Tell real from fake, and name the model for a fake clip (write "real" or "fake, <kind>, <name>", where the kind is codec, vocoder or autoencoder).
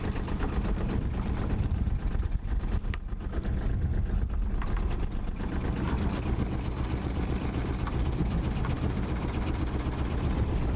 real